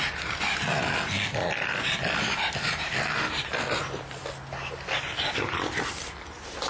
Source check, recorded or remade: recorded